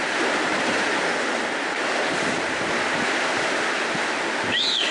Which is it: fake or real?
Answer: real